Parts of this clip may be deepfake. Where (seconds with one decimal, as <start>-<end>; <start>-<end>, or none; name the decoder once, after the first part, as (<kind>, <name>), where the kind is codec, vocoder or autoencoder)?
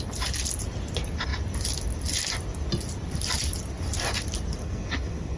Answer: 4.6-5.4 (codec, SNAC)